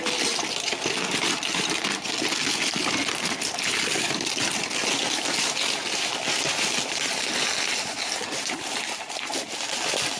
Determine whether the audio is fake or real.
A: real